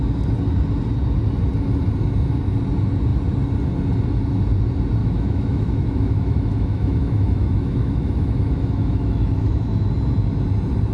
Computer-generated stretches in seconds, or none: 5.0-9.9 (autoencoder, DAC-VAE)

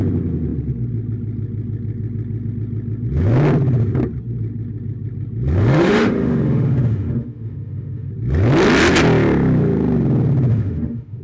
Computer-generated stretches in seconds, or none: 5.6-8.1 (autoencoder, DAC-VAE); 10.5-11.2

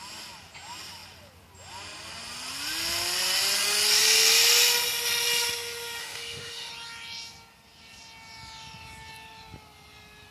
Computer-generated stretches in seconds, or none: 6.0-6.7 (autoencoder, DAC-VAE)

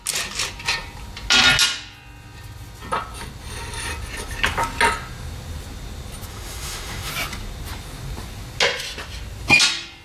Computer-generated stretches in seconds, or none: 6.3-7.1 (autoencoder, DAC-VAE)

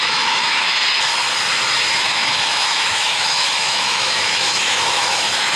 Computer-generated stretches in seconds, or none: 0.0-0.8 (autoencoder, DAC-VAE); 2.0-5.6